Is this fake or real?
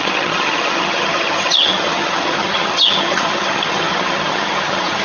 fake